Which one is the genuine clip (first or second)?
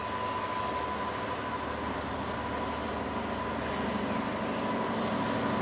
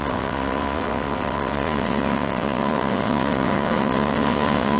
first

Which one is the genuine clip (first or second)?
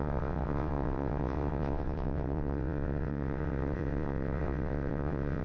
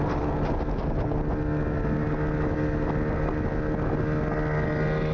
second